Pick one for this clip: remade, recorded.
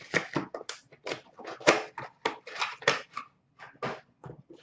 recorded